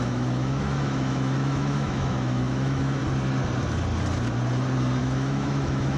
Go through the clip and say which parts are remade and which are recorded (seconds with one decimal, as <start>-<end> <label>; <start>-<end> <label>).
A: 0.0-3.0 remade; 3.0-5.0 recorded; 5.0-6.0 remade